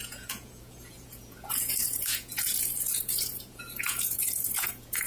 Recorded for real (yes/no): no